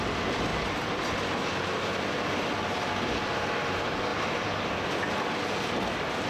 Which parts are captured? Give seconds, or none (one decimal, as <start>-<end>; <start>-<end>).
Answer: 0.0-4.1; 4.9-6.3